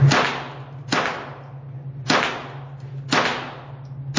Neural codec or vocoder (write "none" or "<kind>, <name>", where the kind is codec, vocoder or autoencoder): none